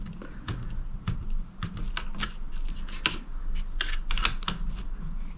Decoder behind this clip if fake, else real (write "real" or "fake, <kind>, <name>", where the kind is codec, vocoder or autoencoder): real